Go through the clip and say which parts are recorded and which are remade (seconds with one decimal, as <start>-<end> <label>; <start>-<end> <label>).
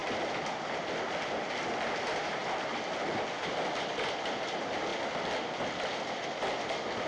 0.0-2.4 remade; 2.4-4.5 recorded; 4.5-4.9 remade; 4.9-5.6 recorded; 5.6-7.1 remade